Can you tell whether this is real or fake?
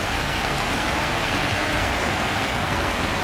fake